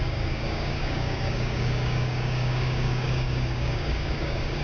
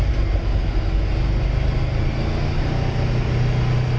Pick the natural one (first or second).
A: second